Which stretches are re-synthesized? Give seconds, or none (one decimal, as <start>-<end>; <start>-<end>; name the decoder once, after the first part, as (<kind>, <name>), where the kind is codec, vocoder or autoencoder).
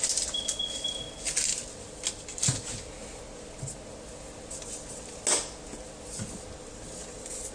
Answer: none